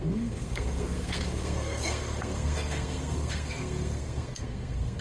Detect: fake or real fake